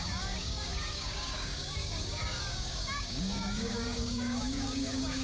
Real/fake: fake